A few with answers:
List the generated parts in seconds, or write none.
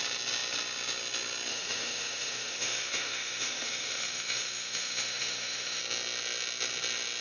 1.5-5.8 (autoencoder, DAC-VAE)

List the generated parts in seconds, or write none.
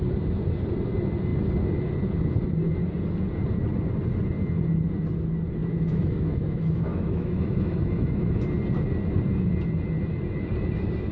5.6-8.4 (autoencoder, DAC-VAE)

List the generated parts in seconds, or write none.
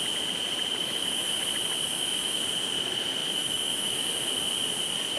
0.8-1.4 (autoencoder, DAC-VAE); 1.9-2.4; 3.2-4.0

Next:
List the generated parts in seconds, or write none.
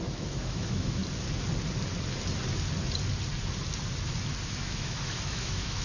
0.0-1.0 (autoencoder, DAC-VAE); 4.5-5.8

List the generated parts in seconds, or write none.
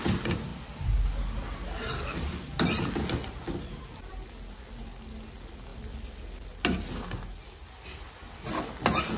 none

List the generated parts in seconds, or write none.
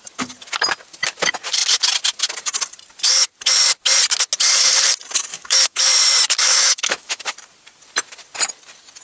5.3-5.8 (autoencoder, DAC-VAE); 6.5-7.2